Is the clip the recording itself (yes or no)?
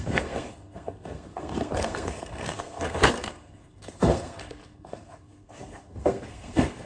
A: no